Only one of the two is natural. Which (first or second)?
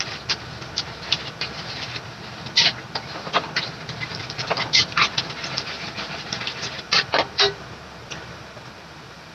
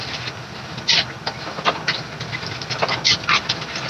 second